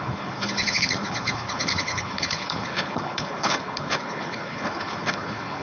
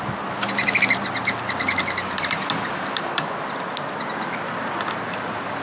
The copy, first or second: first